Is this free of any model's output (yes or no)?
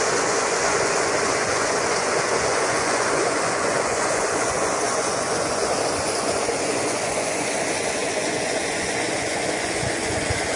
no